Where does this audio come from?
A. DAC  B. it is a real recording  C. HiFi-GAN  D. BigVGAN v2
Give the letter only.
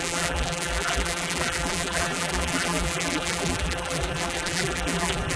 D